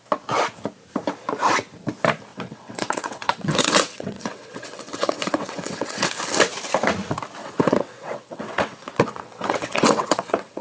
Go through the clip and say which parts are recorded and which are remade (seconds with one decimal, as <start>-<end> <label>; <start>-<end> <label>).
0.0-2.3 recorded; 2.3-6.1 remade; 6.1-7.4 recorded; 7.4-10.6 remade